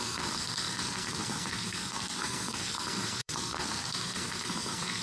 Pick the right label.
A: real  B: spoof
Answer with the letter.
B